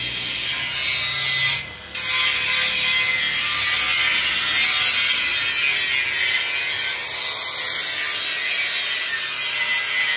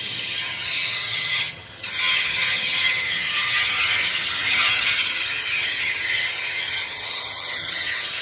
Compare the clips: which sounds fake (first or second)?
second